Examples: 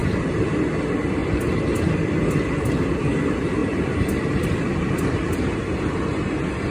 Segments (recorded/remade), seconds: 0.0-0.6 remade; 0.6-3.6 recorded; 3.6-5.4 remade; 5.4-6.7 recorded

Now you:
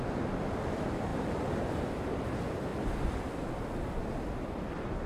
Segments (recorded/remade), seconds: 0.0-2.7 remade; 2.7-4.0 recorded; 4.0-5.1 remade

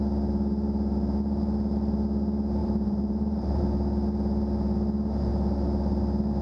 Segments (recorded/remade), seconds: 0.0-2.6 recorded; 2.6-3.6 remade; 3.6-6.4 recorded

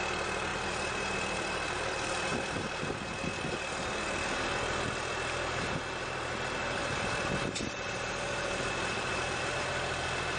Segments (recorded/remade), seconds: 0.0-0.5 recorded; 0.5-3.3 remade; 3.3-6.6 recorded; 6.6-9.7 remade; 9.7-10.4 recorded

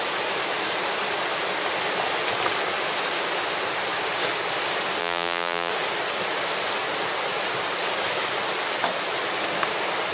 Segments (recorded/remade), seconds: 0.0-5.0 recorded; 5.0-5.7 remade; 5.7-10.1 recorded

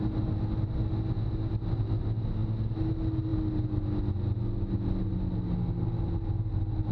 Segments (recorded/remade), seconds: 0.0-6.9 recorded

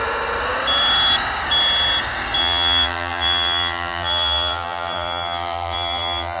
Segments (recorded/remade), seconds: 0.0-2.4 recorded; 2.4-6.4 remade